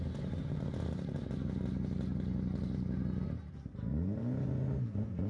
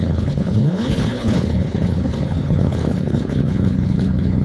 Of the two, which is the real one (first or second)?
first